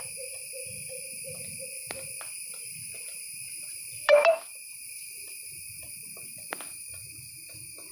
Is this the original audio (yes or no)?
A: no